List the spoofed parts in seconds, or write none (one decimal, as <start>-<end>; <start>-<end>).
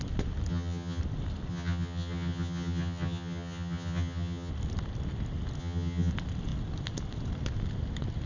0.5-1.0; 1.5-4.5; 5.6-6.1